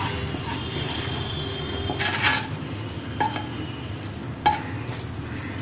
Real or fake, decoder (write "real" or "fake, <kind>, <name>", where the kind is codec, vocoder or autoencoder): real